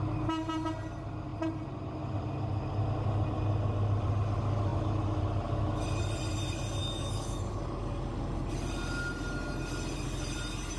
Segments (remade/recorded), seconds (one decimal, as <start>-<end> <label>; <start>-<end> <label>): 0.0-6.8 recorded; 6.8-8.5 remade; 8.5-10.8 recorded